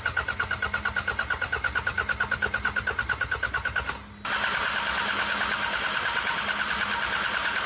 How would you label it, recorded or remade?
recorded